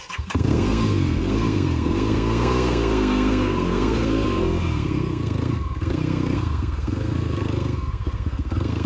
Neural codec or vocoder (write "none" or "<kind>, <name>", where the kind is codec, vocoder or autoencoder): codec, SNAC